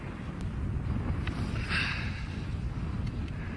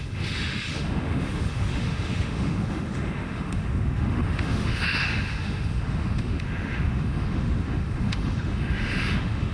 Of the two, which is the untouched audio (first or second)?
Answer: first